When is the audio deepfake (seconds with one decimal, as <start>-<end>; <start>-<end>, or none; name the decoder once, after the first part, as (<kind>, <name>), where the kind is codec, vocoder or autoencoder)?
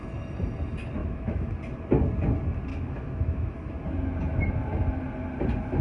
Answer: 1.0-1.5 (autoencoder, DAC-VAE); 2.7-3.7